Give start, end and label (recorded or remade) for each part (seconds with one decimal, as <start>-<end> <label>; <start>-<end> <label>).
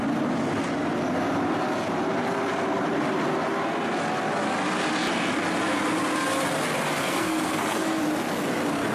0.0-7.0 recorded; 7.0-8.0 remade; 8.0-8.9 recorded